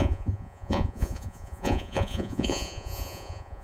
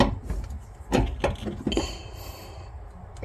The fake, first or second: first